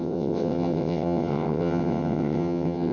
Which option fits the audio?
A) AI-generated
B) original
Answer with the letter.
A